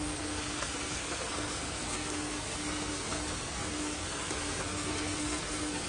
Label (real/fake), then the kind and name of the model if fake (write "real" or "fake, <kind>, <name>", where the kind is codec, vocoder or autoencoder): fake, codec, SNAC